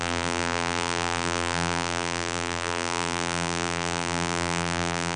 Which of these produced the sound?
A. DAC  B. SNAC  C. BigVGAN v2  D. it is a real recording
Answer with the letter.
C